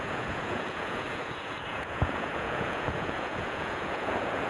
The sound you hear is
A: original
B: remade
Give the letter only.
B